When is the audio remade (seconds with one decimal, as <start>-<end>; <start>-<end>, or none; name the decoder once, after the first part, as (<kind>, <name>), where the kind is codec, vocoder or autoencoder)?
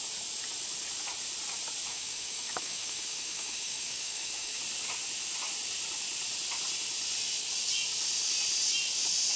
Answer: 1.9-4.6 (autoencoder, DAC-VAE)